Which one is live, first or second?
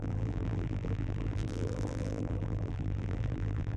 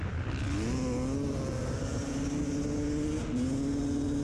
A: second